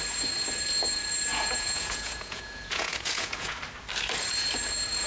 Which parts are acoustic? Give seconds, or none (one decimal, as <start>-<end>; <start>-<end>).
0.0-1.3; 3.6-5.1